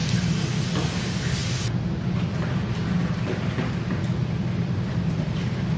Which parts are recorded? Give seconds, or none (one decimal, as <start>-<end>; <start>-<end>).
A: 0.0-5.8